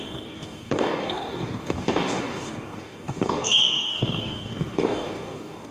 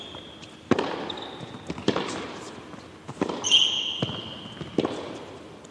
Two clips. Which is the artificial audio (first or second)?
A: first